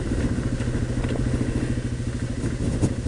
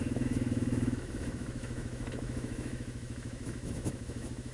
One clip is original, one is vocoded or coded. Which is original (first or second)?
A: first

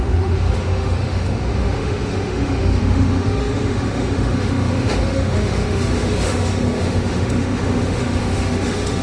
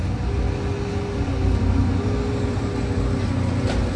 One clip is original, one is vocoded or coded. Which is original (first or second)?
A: second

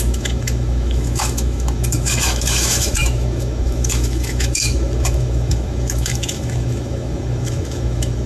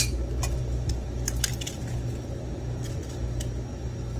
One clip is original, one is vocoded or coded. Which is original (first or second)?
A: second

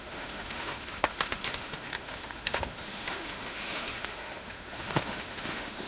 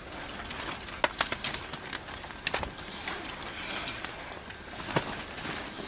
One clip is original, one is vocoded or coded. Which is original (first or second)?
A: second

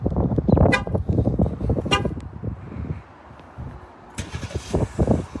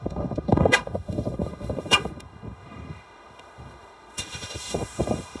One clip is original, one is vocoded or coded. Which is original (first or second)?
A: first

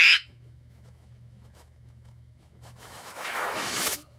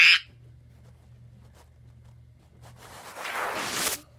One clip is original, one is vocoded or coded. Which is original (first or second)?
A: second